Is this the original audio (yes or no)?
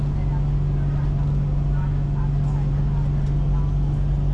yes